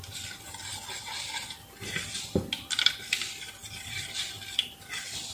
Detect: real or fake real